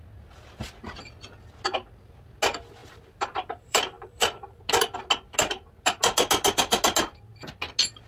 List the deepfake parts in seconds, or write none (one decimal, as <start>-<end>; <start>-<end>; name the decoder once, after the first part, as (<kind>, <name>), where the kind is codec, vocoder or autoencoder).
2.8-4.6 (vocoder, BigVGAN v2)

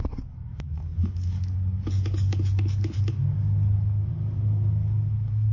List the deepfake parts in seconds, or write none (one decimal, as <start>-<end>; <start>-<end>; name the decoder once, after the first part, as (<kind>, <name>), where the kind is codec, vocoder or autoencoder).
0.0-5.5 (codec, DAC)

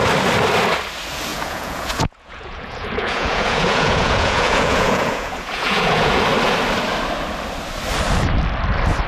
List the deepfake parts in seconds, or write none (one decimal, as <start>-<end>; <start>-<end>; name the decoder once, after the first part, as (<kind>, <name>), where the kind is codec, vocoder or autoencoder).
1.3-6.2 (vocoder, Vocos)

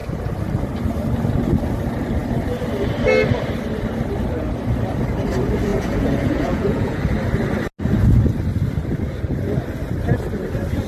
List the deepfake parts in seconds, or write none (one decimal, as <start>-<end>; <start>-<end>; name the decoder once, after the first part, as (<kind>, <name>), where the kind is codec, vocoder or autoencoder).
5.7-7.0 (vocoder, Vocos)

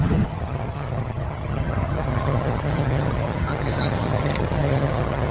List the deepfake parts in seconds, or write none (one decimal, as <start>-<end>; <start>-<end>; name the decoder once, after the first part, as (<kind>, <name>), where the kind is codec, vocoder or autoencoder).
0.0-5.3 (vocoder, HiFi-GAN)